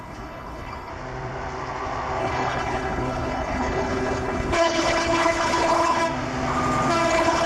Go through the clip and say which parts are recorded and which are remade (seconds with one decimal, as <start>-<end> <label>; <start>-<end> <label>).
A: 0.0-0.9 remade; 0.9-2.2 recorded; 2.2-6.0 remade; 6.0-7.1 recorded; 7.1-7.5 remade